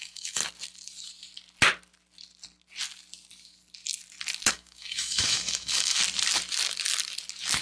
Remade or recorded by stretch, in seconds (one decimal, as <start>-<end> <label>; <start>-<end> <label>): 0.0-0.4 remade; 0.4-4.5 recorded; 4.5-6.0 remade; 6.0-7.6 recorded